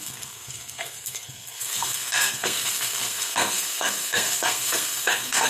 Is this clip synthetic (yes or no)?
yes